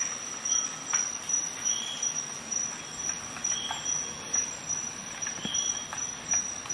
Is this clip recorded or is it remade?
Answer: recorded